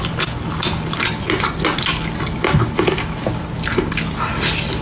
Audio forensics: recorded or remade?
recorded